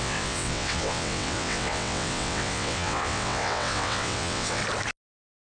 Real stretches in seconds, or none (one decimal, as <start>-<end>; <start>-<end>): 4.6-5.5